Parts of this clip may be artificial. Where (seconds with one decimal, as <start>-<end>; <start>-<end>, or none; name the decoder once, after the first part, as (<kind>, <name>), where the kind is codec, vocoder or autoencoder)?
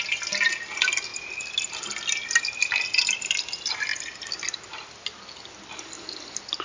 none